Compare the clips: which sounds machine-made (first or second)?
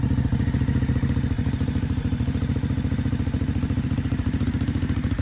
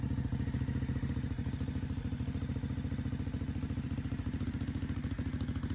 first